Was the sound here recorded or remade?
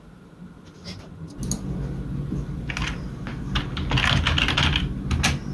recorded